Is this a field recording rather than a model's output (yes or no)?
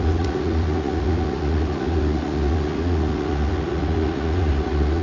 no